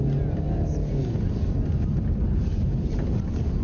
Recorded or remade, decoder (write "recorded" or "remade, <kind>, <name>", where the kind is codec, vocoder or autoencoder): recorded